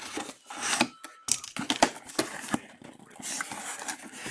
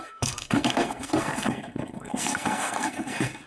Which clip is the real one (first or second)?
first